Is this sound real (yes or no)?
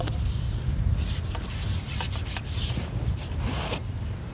yes